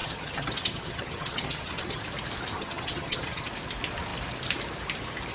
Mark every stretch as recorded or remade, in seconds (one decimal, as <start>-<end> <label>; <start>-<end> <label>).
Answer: 0.0-2.0 remade; 2.0-2.5 recorded; 2.5-3.5 remade; 3.5-5.3 recorded